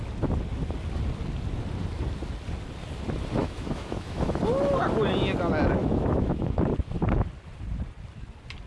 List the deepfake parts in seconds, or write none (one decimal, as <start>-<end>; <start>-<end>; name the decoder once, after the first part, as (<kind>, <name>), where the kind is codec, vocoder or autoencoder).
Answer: 3.4-4.4 (autoencoder, DAC-VAE); 5.8-6.6

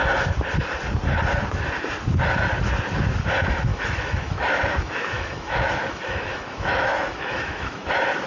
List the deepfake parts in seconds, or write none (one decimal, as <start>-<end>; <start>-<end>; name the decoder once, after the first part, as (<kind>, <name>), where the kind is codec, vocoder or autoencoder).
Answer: 3.7-7.9 (autoencoder, DAC-VAE)

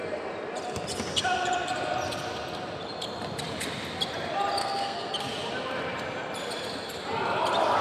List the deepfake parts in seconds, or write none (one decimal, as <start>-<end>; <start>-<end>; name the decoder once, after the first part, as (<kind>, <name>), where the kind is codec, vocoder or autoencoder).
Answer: 4.6-5.1 (codec, SNAC)

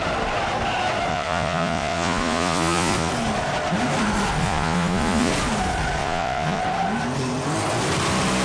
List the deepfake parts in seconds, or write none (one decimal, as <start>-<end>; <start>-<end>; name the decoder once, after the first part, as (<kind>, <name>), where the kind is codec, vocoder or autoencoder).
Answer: 1.1-3.1 (vocoder, Vocos); 4.4-5.3; 6.0-6.6

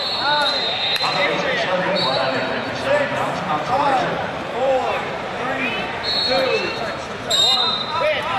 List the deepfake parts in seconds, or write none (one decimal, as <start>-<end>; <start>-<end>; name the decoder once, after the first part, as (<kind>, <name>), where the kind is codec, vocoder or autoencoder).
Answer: 0.0-8.4 (vocoder, BigVGAN v2)